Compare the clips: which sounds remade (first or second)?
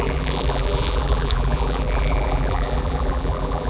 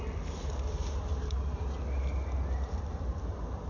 first